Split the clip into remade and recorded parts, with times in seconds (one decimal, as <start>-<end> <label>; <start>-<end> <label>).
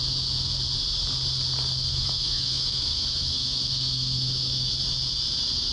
0.0-1.9 recorded; 1.9-4.7 remade; 4.7-5.7 recorded